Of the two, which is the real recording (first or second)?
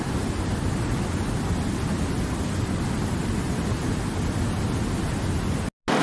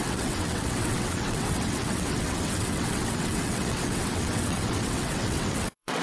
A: first